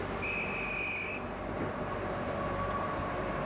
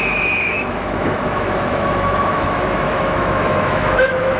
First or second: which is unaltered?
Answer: first